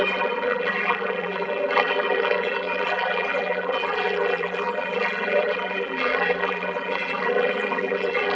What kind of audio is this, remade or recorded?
remade